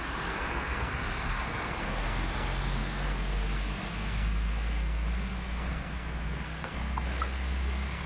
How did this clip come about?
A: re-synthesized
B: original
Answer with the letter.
A